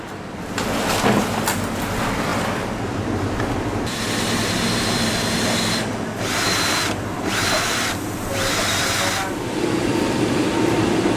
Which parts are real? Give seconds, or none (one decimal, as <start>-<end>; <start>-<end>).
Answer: 2.3-2.8